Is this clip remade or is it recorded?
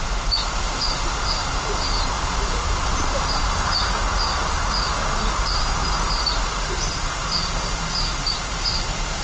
recorded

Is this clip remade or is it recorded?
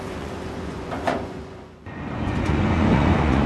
remade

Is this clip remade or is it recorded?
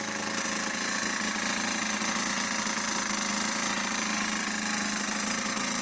recorded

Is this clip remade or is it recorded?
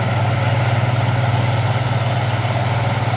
recorded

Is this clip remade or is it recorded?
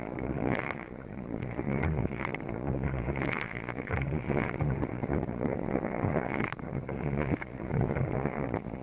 remade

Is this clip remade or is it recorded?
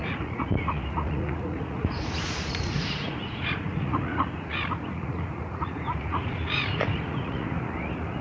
remade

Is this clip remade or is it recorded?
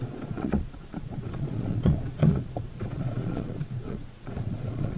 remade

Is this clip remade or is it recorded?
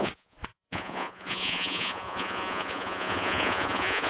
remade